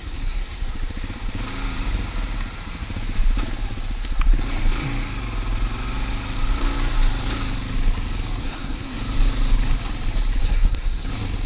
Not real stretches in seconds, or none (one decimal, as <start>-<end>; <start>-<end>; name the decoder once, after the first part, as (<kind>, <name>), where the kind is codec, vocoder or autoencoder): 0.0-0.7 (codec, SNAC); 8.4-9.0; 10.4-11.1